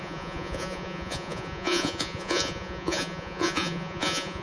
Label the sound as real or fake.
fake